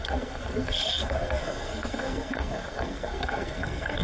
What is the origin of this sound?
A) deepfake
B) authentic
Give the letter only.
A